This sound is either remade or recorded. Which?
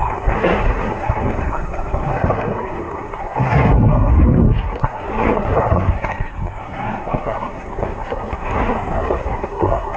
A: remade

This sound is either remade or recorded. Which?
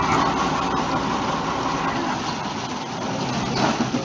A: recorded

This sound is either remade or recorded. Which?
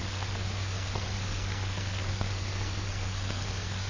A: remade